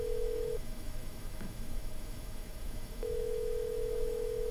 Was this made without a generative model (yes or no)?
no